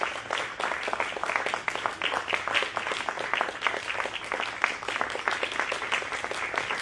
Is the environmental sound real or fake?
real